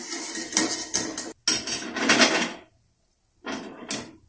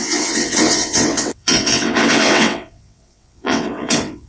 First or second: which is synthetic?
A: second